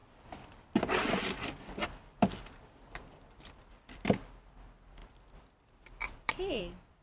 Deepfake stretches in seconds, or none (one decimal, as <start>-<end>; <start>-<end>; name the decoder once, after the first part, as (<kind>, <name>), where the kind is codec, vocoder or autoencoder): 0.0-4.2 (vocoder, BigVGAN v2); 5.0-6.6